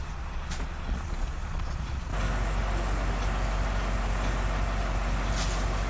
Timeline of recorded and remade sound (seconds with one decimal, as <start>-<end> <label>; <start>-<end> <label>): 0.0-2.1 remade; 2.1-5.9 recorded